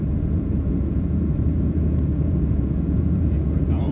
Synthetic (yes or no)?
yes